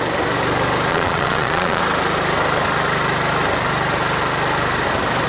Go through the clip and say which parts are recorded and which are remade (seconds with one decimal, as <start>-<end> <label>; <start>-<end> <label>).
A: 0.0-0.9 recorded; 0.9-1.8 remade; 1.8-5.3 recorded